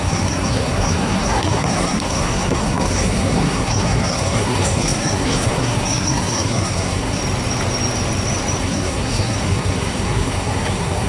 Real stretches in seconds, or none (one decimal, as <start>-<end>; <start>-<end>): 7.2-8.6